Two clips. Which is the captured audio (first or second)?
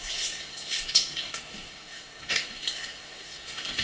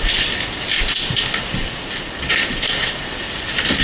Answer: second